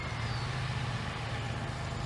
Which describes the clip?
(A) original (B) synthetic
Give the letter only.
A